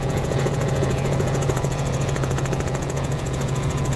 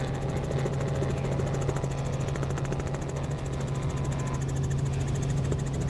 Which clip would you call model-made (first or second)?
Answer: first